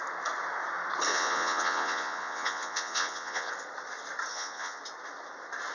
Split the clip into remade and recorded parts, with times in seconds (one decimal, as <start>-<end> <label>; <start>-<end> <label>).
0.0-1.1 recorded; 1.1-3.5 remade; 3.5-4.3 recorded; 4.3-4.8 remade; 4.8-5.7 recorded